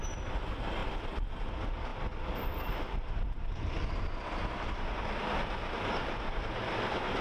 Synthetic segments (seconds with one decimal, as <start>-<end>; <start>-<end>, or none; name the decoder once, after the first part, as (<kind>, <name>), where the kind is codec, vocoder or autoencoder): none